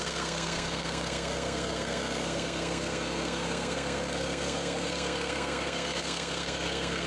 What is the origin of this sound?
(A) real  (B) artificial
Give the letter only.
B